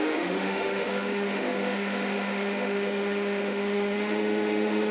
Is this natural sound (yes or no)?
no